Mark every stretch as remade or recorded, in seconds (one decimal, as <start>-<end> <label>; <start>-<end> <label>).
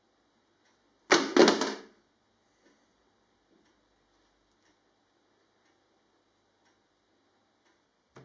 0.0-8.2 recorded